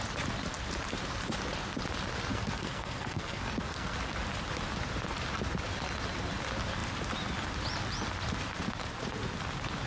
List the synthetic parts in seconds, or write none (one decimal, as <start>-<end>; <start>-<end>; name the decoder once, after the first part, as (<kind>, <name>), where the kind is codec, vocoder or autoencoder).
2.3-4.0 (codec, SNAC)